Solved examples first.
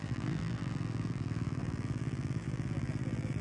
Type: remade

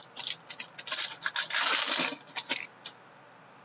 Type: recorded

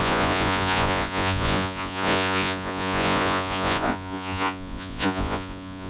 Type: remade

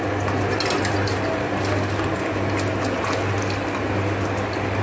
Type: recorded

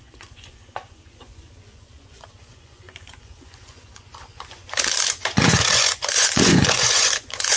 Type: remade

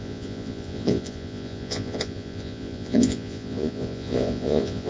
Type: remade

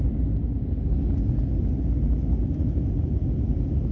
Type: recorded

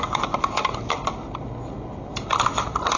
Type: recorded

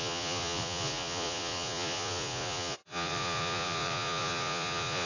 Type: remade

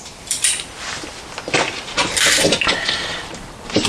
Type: remade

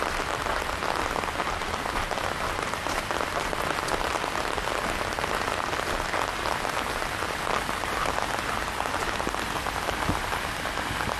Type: recorded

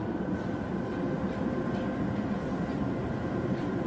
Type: recorded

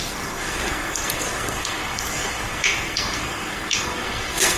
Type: remade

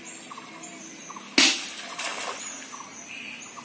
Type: recorded